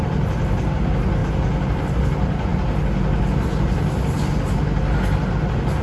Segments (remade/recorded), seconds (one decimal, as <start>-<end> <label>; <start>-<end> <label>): 0.0-5.8 recorded